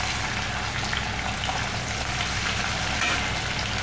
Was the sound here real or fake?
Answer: real